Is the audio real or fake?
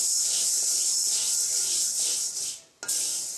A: real